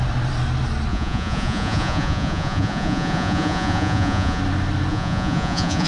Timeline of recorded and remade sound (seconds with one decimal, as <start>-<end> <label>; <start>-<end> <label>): 0.0-0.9 recorded; 0.9-4.4 remade; 4.4-4.9 recorded; 4.9-5.9 remade